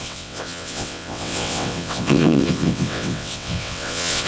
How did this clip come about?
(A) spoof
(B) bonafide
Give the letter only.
A